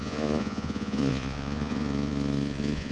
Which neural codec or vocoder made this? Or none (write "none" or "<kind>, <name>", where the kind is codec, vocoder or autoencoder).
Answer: vocoder, Vocos